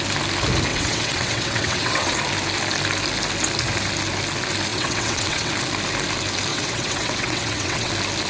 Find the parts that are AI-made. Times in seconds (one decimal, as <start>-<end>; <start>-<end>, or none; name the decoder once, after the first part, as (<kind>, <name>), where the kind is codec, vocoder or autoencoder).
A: 0.7-2.2 (vocoder, WaveNeXt); 4.7-5.5; 6.5-7.9